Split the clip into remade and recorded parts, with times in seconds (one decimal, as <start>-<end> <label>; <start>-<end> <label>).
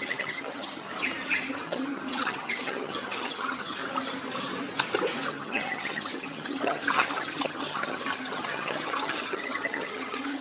0.0-0.9 remade; 0.9-1.5 recorded; 1.5-3.8 remade; 3.8-5.3 recorded; 5.3-10.4 remade